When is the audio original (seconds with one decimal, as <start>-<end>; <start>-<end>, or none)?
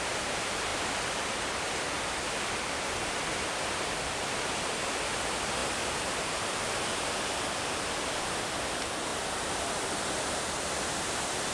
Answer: 0.0-11.5